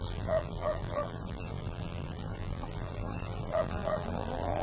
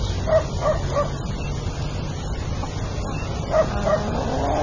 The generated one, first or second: first